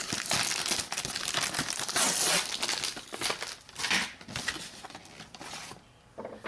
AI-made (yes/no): no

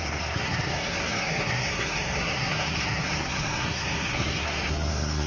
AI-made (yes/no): yes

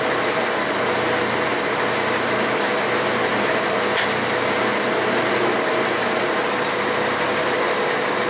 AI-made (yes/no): no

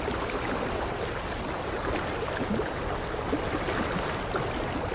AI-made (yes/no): no